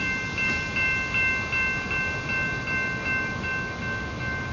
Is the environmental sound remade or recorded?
recorded